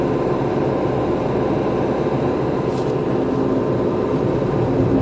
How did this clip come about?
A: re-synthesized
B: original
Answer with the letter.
B